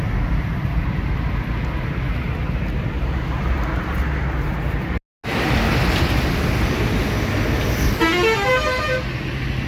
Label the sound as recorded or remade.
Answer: recorded